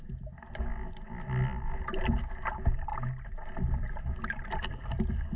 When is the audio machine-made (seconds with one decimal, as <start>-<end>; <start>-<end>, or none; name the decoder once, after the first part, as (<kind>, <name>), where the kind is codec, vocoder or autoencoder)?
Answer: none